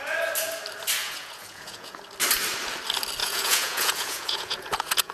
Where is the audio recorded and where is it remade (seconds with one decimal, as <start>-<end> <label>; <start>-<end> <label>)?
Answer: 0.0-1.0 recorded; 1.0-2.0 remade; 2.0-3.2 recorded; 3.2-5.1 remade